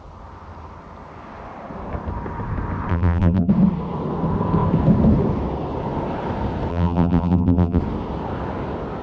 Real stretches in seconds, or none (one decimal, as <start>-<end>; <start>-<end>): 0.0-2.9; 3.5-6.7; 7.8-9.0